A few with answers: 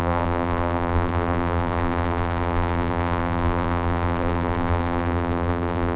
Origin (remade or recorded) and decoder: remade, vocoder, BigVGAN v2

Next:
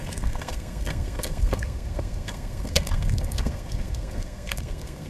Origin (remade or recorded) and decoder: remade, codec, SNAC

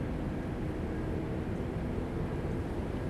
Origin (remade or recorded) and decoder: recorded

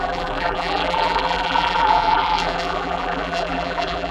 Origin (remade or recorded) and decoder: remade, vocoder, BigVGAN v2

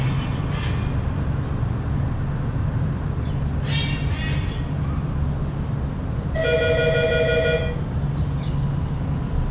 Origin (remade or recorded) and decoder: recorded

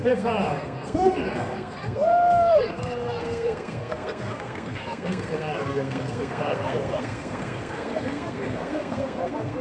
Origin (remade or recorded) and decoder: remade, codec, SNAC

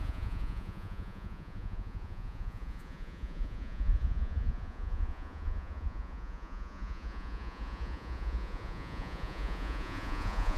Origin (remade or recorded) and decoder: remade, vocoder, Vocos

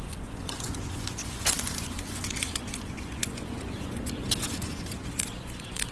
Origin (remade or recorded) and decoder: remade, vocoder, Vocos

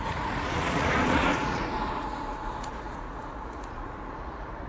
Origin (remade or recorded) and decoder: remade, vocoder, Vocos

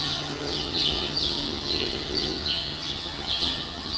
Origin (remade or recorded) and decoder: remade, vocoder, HiFi-GAN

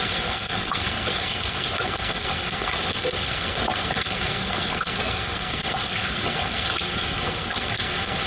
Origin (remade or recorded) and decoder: remade, codec, SNAC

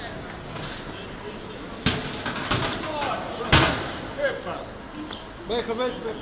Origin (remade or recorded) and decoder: recorded